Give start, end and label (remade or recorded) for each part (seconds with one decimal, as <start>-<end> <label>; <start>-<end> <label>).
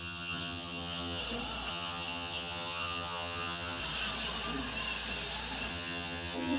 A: 0.0-1.2 remade; 1.2-1.7 recorded; 1.7-3.8 remade; 3.8-5.7 recorded; 5.7-6.6 remade